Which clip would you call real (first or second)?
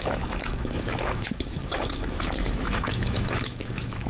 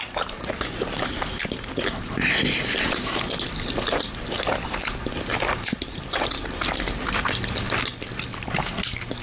second